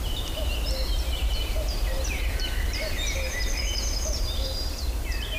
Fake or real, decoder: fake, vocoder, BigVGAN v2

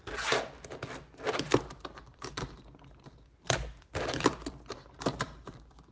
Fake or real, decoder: real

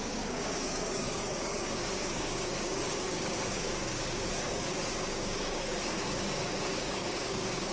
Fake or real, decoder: fake, codec, DAC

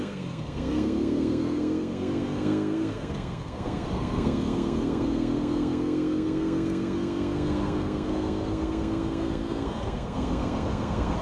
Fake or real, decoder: fake, codec, SNAC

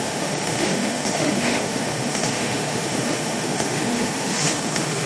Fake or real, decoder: fake, autoencoder, DAC-VAE